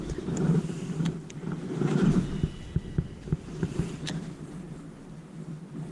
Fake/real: fake